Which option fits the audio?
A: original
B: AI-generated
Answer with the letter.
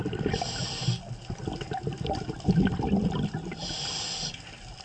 A